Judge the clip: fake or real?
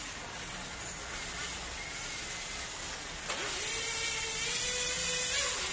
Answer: real